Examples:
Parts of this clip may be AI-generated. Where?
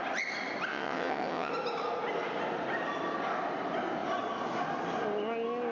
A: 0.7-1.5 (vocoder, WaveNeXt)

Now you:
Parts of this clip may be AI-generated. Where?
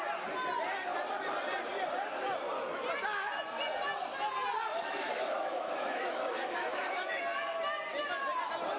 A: 4.7-7.2 (autoencoder, DAC-VAE)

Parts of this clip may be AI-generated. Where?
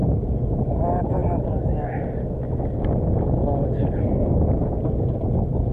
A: none